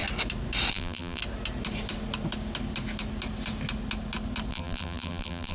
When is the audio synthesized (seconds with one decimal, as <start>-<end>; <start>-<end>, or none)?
0.7-1.2; 4.5-5.5